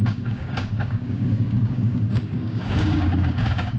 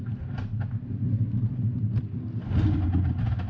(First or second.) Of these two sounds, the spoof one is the first